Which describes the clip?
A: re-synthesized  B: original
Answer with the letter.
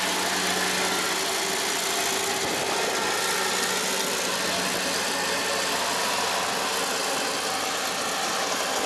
B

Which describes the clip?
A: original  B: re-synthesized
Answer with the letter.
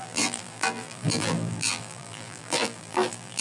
B